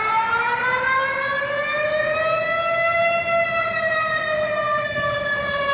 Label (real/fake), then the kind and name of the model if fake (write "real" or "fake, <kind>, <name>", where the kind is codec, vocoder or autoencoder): real